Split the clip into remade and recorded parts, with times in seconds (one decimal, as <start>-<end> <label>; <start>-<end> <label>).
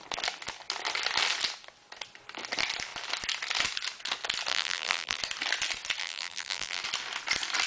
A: 0.0-4.5 recorded; 4.5-5.2 remade; 5.2-6.0 recorded; 6.0-6.8 remade; 6.8-7.7 recorded